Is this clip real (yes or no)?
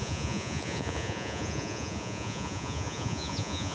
no